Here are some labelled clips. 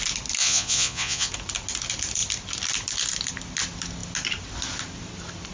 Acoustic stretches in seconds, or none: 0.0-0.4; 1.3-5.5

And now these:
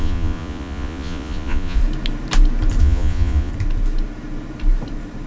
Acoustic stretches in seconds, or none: 1.8-2.8; 3.5-5.3

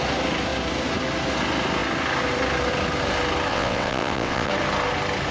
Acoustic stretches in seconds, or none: 0.0-3.5; 4.5-5.3